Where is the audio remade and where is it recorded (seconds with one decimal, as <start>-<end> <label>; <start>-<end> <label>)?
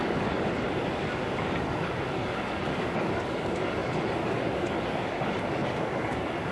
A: 0.0-6.5 remade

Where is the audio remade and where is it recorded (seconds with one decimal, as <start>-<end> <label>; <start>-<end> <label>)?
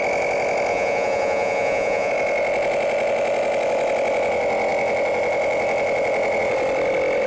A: 0.0-0.7 recorded; 0.7-2.1 remade; 2.1-7.3 recorded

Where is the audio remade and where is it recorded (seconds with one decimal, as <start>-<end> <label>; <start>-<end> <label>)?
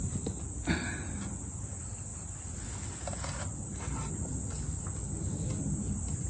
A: 0.0-6.3 recorded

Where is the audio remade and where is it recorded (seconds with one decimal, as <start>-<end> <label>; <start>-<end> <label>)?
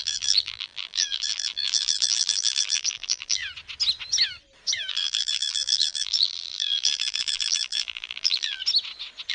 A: 0.0-3.4 remade; 3.4-4.9 recorded; 4.9-8.6 remade; 8.6-9.3 recorded